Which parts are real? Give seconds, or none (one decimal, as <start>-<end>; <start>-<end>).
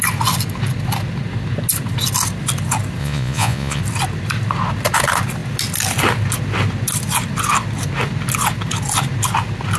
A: 0.0-3.0; 3.8-9.8